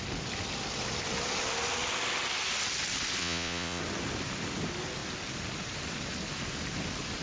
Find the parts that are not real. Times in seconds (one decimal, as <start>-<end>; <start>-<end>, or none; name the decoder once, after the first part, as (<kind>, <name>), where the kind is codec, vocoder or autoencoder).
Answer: 3.2-3.8 (vocoder, Vocos)

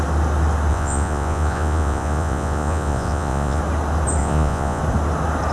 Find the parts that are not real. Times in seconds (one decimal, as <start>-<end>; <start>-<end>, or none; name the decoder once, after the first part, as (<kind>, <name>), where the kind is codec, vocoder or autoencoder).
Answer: 0.7-3.6 (vocoder, Vocos); 4.2-4.8

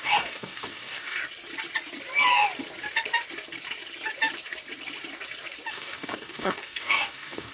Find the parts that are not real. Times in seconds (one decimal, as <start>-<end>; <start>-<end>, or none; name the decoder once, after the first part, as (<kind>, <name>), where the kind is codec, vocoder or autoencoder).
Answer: 0.0-1.2 (codec, DAC); 5.7-7.5

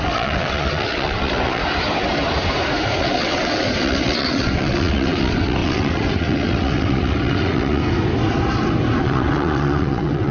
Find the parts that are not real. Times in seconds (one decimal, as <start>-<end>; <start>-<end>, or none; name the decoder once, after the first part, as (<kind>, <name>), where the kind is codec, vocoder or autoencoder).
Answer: 0.0-1.6 (vocoder, WaveNeXt); 3.0-7.8; 9.0-10.3

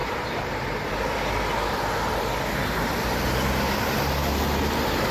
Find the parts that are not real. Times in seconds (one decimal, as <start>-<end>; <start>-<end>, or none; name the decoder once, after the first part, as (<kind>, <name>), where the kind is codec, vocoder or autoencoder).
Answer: 0.0-0.9 (vocoder, BigVGAN v2)

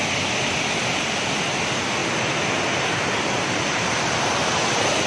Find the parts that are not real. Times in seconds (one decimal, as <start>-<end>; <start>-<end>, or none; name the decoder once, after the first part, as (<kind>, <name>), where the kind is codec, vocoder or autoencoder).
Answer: none

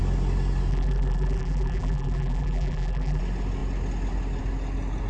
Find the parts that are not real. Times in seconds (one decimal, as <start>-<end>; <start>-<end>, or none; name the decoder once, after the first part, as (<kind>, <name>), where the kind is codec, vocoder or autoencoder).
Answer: 0.7-3.2 (vocoder, BigVGAN v2)